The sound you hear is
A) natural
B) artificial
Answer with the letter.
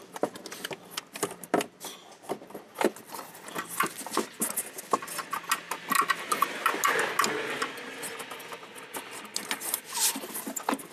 A